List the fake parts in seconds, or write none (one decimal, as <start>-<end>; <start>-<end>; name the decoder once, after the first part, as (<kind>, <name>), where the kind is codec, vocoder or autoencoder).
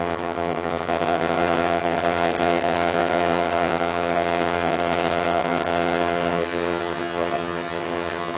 0.0-8.4 (vocoder, HiFi-GAN)